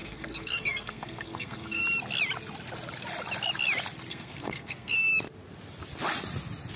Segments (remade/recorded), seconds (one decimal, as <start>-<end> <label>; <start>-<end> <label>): 0.0-1.8 remade; 1.8-4.1 recorded; 4.1-5.1 remade; 5.1-6.8 recorded